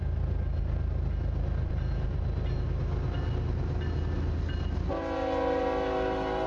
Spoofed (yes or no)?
no